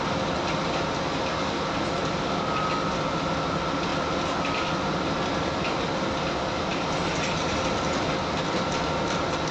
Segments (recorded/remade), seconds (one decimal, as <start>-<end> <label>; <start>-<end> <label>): 0.0-9.5 recorded